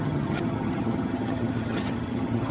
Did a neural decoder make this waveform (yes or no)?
yes